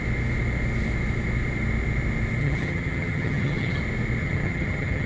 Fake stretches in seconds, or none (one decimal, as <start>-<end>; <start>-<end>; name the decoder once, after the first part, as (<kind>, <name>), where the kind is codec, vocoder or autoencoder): 2.4-3.8 (vocoder, HiFi-GAN); 4.2-5.1